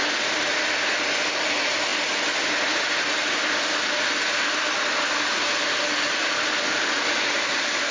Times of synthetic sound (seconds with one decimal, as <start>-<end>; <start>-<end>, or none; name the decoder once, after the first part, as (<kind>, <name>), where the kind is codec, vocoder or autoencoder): none